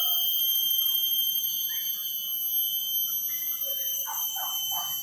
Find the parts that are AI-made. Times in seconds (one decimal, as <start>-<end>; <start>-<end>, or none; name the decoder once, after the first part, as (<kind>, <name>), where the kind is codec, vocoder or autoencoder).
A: none